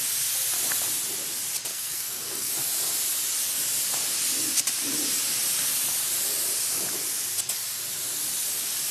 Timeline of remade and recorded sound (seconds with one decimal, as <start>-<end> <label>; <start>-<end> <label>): 0.0-1.7 recorded; 1.7-2.5 remade; 2.5-8.9 recorded